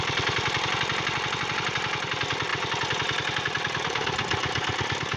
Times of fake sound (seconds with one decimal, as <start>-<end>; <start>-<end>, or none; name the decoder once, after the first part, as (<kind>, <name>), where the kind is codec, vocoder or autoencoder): none